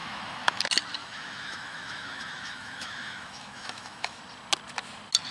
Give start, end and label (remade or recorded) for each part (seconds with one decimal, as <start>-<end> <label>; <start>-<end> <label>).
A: 0.0-0.6 remade; 0.6-1.0 recorded; 1.0-4.2 remade; 4.2-5.3 recorded